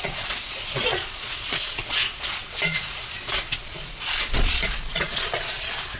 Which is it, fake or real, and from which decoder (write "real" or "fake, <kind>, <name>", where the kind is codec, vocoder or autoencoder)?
fake, vocoder, Vocos